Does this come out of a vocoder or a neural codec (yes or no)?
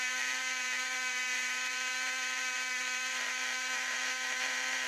yes